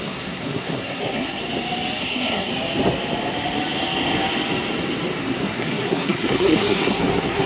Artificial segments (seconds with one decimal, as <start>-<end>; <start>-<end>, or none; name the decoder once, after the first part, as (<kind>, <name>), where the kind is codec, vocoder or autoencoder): 0.0-1.4 (codec, SNAC); 2.0-2.5; 5.2-7.5